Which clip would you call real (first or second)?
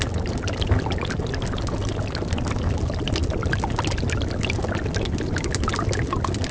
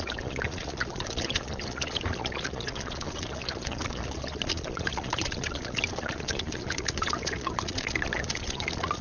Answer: first